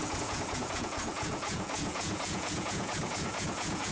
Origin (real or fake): fake